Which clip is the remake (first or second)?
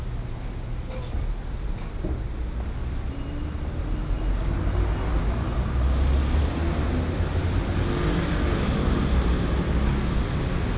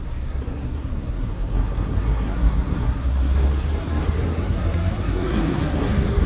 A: second